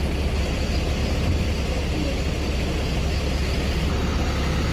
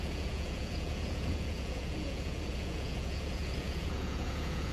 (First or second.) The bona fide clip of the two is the first